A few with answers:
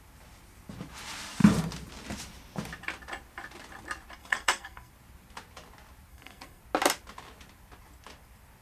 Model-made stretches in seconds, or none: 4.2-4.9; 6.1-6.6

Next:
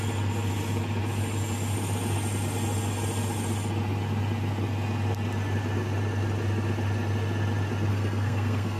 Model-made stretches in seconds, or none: 7.9-8.8

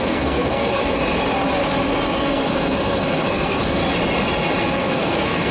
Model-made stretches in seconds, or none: 0.0-1.0; 2.2-3.8; 4.6-5.5

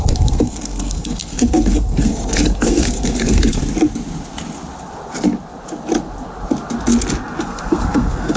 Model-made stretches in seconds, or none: 0.0-3.6; 7.4-8.4

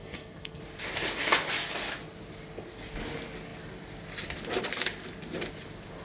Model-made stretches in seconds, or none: 0.0-0.6

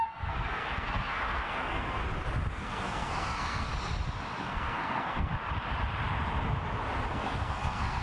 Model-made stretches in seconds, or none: 0.0-2.0; 2.5-3.7; 4.4-5.3; 7.1-8.0

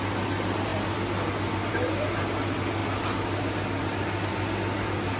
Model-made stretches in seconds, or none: none